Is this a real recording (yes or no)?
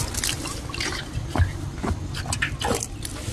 yes